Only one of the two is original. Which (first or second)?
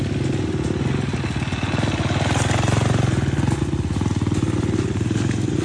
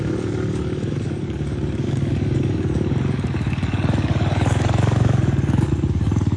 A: first